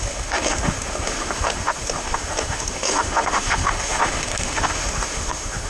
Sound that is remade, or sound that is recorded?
remade